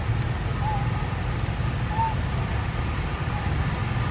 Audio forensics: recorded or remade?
recorded